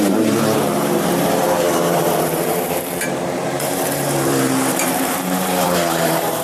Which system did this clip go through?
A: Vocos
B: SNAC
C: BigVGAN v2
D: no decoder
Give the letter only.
C